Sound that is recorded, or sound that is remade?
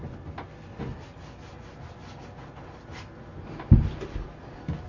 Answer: recorded